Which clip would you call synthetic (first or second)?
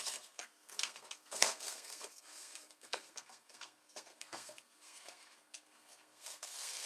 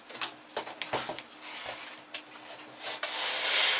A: first